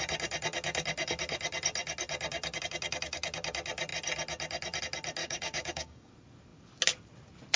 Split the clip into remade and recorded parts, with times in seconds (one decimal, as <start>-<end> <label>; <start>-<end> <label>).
0.0-5.2 recorded; 5.2-6.1 remade; 6.1-7.6 recorded